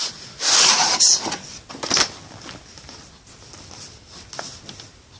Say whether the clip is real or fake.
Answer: real